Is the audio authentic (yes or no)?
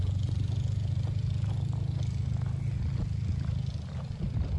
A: yes